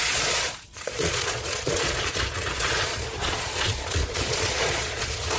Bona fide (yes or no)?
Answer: no